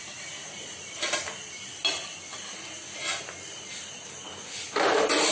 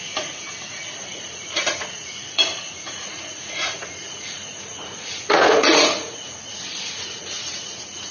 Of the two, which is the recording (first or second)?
first